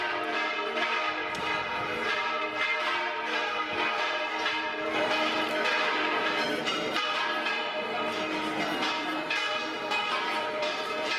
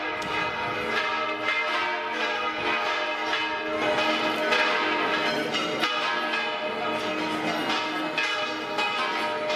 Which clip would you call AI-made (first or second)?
first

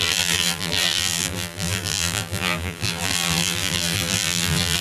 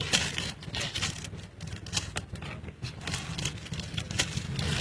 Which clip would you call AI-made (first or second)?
first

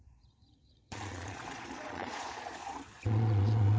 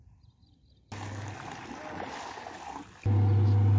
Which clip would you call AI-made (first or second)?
first